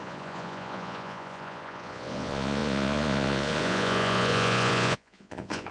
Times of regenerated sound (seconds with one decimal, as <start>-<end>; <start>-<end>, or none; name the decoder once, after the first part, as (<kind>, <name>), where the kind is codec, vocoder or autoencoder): 0.0-5.7 (vocoder, Vocos)